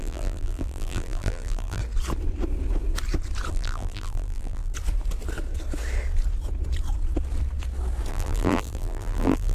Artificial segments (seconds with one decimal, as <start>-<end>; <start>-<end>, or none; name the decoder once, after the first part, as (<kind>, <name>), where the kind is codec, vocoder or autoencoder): 0.0-1.8 (vocoder, BigVGAN v2); 3.5-4.7; 8.1-9.5